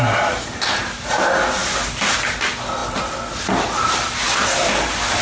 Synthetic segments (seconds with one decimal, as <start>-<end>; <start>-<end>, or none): none